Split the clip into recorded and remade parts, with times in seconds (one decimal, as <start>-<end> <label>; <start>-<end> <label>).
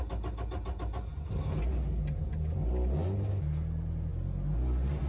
0.0-5.1 recorded